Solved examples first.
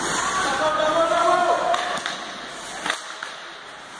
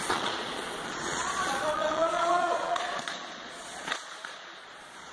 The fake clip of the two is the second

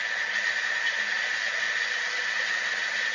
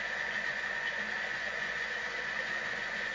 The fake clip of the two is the second